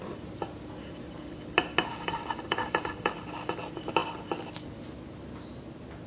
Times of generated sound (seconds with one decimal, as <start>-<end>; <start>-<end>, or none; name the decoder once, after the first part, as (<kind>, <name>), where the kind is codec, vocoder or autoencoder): 1.9-3.1 (codec, DAC)